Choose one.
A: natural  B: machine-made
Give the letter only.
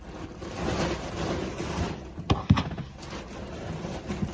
A